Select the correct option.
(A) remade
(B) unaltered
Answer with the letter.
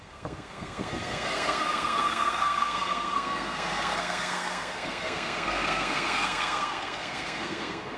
A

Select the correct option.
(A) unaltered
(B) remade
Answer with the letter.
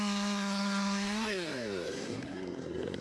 B